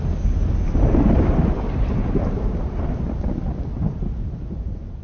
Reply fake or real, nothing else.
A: real